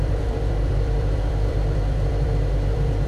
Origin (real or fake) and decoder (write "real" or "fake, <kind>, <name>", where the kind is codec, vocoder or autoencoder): fake, vocoder, BigVGAN v2